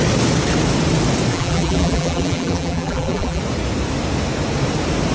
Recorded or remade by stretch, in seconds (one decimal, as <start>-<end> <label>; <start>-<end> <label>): 0.0-1.3 recorded; 1.3-3.4 remade; 3.4-5.1 recorded